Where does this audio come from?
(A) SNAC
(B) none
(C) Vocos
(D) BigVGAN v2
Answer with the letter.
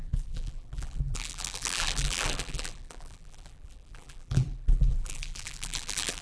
D